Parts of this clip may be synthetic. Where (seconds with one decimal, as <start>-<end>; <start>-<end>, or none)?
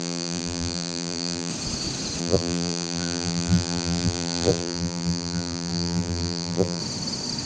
0.0-1.5; 2.2-6.8